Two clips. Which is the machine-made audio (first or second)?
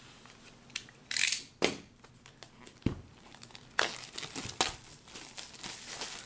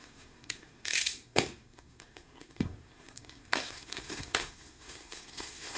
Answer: second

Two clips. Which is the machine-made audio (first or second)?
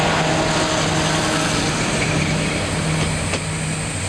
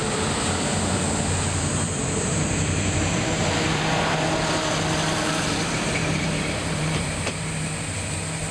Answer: second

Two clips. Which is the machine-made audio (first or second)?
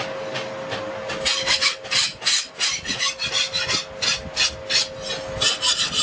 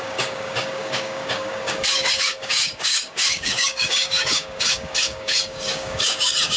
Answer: second